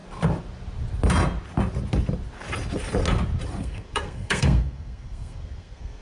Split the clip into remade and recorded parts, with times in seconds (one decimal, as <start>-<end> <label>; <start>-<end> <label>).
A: 0.0-3.6 recorded; 3.6-6.0 remade